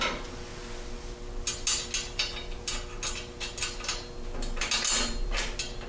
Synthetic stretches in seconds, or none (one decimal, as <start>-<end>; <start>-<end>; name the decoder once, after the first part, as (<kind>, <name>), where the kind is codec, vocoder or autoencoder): none